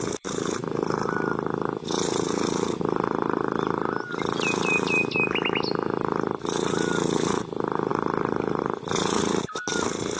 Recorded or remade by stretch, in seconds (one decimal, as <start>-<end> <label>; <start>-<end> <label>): 0.0-10.2 recorded